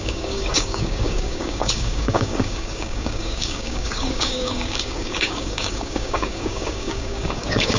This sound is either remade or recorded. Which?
remade